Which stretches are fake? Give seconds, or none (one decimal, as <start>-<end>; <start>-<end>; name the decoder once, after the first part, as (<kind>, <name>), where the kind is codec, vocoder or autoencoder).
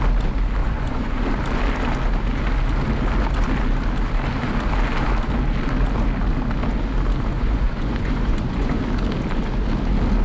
0.6-1.3 (vocoder, Vocos); 7.3-8.8